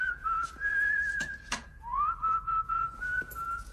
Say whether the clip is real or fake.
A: fake